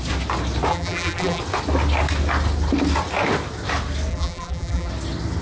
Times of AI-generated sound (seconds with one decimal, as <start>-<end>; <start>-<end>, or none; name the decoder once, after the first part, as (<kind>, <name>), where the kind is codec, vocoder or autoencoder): 0.7-1.4 (vocoder, BigVGAN v2); 4.1-4.9